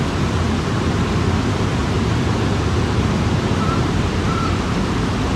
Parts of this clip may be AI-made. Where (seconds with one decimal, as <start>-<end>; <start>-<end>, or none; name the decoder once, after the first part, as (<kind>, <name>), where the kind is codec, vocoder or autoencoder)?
1.8-5.0 (vocoder, BigVGAN v2)